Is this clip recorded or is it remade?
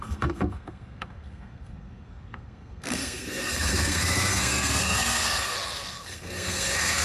remade